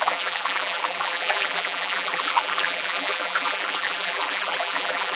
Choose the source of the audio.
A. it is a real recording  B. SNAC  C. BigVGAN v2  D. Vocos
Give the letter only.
C